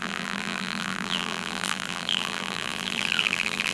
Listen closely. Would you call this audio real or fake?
fake